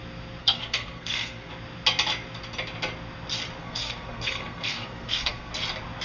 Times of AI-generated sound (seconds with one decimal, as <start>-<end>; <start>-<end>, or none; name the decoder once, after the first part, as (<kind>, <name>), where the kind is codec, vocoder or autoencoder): 0.4-1.5 (codec, SNAC); 3.6-5.5